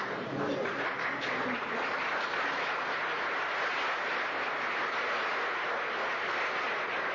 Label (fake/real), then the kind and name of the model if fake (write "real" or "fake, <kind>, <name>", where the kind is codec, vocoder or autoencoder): real